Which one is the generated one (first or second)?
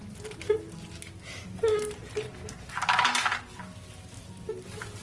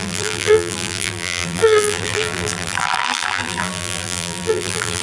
second